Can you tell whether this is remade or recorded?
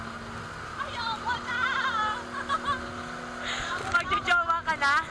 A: recorded